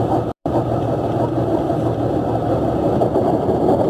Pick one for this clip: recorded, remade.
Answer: remade